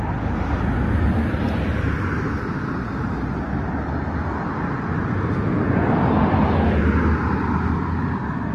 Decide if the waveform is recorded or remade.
recorded